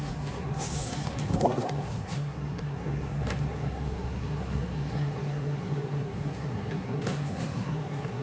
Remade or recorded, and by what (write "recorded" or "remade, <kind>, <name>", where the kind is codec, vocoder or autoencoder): remade, codec, SNAC